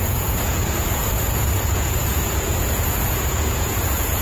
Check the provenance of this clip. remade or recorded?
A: remade